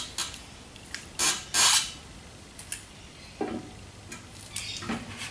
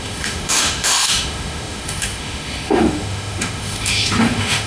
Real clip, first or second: first